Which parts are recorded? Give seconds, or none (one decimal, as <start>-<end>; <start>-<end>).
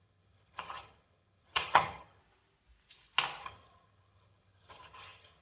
2.2-3.4